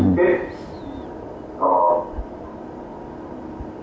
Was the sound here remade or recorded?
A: recorded